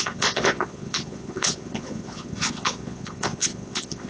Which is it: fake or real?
fake